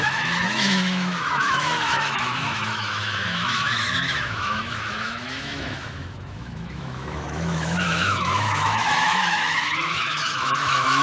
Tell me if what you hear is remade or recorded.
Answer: remade